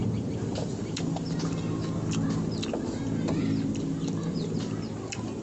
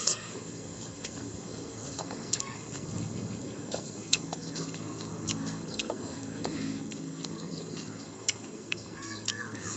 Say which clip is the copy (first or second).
second